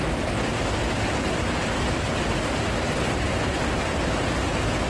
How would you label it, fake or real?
real